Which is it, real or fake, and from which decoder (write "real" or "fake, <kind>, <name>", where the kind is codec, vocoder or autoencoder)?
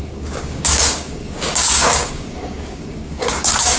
fake, codec, DAC